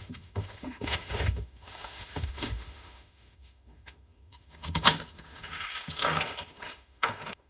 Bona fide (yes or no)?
no